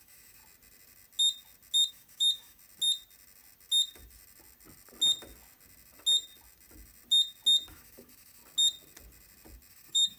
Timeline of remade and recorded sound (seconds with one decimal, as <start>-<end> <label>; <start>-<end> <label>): 0.0-0.4 remade; 0.4-1.9 recorded; 1.9-2.6 remade; 2.6-7.7 recorded; 7.7-8.4 remade; 8.4-9.7 recorded; 9.7-10.2 remade